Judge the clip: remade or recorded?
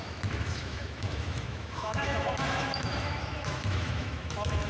remade